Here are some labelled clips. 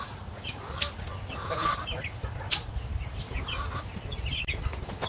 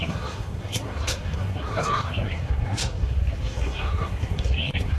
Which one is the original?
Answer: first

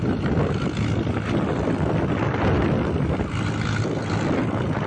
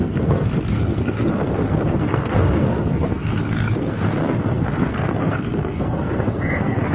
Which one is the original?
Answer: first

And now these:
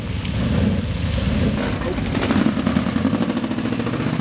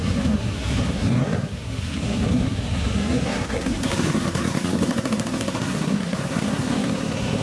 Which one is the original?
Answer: first